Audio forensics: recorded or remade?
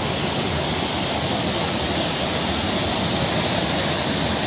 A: recorded